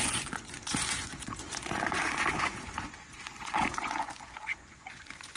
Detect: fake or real fake